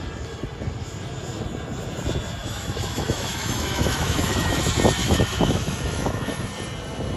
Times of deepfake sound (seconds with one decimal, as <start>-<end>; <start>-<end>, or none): 2.4-4.6; 5.0-6.5